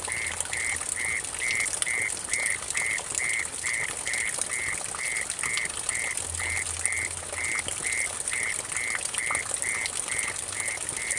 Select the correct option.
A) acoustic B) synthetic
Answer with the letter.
A